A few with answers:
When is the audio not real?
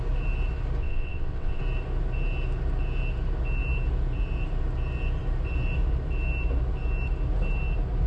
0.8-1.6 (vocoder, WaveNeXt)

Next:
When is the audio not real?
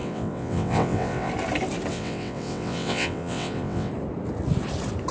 0.0-1.3 (vocoder, WaveNeXt); 1.9-3.9